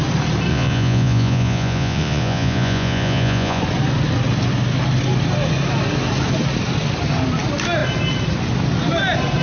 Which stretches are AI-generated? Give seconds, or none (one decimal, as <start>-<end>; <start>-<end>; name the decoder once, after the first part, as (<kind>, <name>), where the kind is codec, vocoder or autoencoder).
0.5-3.6 (vocoder, Vocos)